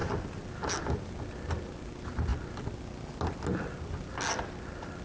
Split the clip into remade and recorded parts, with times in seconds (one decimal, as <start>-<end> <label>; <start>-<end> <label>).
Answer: 0.0-5.0 recorded